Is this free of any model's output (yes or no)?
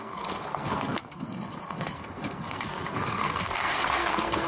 no